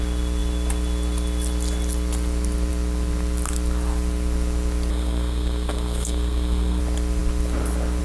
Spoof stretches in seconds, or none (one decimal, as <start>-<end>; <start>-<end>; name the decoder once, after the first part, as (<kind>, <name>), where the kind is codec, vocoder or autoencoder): 4.9-6.8 (codec, SNAC)